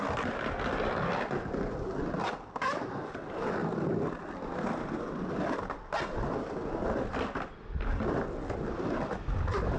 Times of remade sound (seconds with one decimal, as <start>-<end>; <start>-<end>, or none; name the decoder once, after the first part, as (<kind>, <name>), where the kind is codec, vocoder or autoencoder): none